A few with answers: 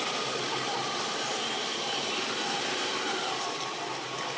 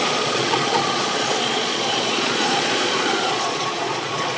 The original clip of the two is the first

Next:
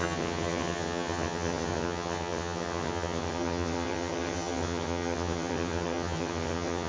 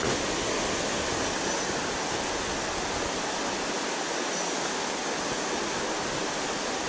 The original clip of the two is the second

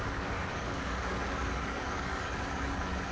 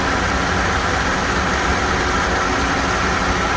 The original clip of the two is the second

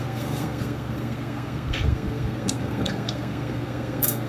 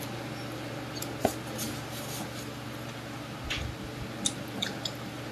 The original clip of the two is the second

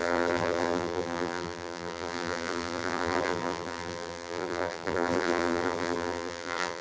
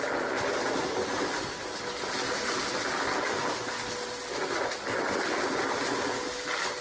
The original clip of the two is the second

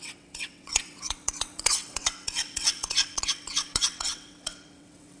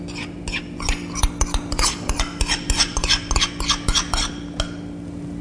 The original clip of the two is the second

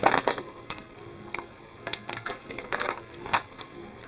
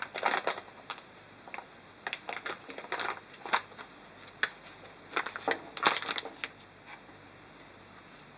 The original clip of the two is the second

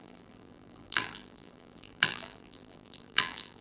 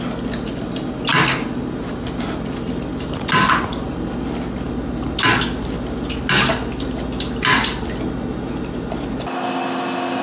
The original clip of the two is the second